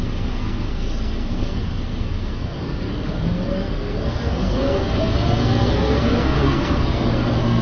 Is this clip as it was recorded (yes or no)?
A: no